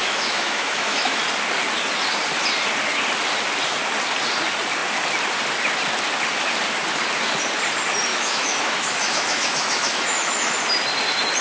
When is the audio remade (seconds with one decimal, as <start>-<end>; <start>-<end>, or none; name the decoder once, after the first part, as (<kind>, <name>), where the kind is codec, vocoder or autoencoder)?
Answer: 0.0-1.2 (autoencoder, DAC-VAE); 8.1-10.5